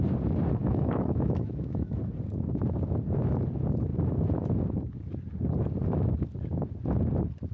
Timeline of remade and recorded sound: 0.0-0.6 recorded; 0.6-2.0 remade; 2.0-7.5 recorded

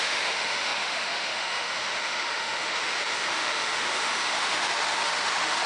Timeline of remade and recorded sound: 0.0-5.7 remade

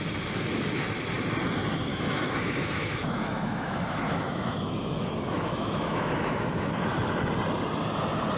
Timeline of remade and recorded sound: 0.0-1.9 recorded; 1.9-6.9 remade; 6.9-8.4 recorded

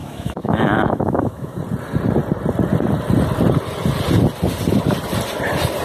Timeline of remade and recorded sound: 0.0-1.6 remade; 1.6-5.8 recorded

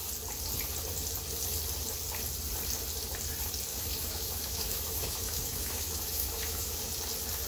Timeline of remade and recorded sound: 0.0-3.7 recorded; 3.7-6.8 remade; 6.8-7.5 recorded

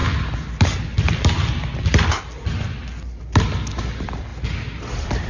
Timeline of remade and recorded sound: 0.0-5.3 recorded

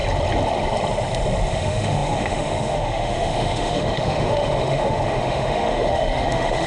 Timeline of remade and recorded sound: 0.0-1.5 recorded; 1.5-6.7 remade

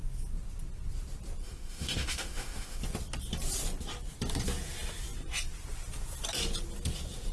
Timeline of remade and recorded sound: 0.0-1.4 recorded; 1.4-2.8 remade; 2.8-7.3 recorded